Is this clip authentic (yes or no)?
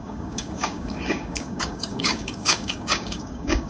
no